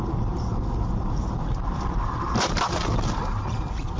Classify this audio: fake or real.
real